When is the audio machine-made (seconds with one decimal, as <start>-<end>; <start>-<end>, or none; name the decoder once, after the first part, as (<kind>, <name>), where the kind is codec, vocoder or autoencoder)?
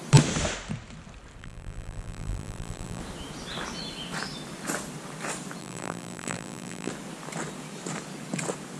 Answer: 1.4-3.0 (vocoder, BigVGAN v2); 5.6-6.9